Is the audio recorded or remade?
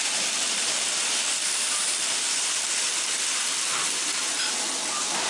remade